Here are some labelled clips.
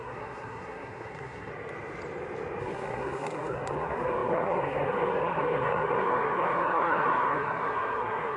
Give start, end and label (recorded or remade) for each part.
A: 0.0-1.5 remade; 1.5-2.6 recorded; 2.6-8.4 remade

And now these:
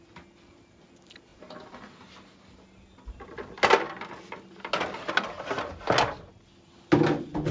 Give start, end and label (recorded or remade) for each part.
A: 0.0-7.5 recorded